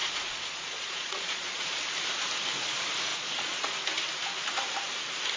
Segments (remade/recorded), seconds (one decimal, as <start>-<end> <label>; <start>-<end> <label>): 0.0-1.8 remade; 1.8-3.1 recorded; 3.1-3.7 remade; 3.7-5.4 recorded